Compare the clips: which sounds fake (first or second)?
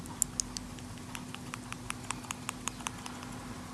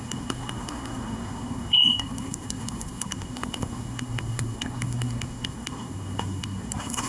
second